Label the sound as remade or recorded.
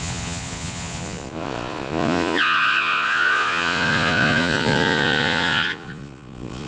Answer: remade